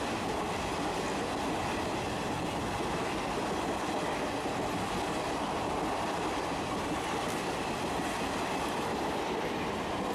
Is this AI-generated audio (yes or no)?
no